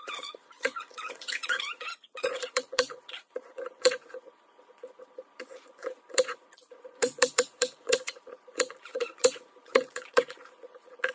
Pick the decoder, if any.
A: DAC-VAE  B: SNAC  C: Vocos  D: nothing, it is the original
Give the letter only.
C